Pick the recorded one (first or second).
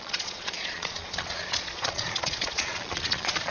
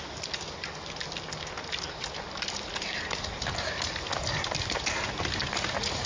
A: second